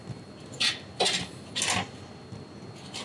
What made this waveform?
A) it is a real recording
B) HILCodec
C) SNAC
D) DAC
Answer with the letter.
A